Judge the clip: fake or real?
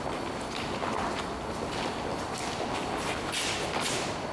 real